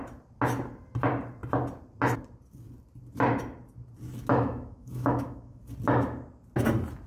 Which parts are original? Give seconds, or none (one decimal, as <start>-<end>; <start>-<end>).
0.0-4.3; 5.6-7.1